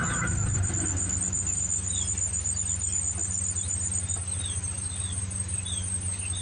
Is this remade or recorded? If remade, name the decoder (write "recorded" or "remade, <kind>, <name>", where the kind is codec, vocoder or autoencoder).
remade, vocoder, BigVGAN v2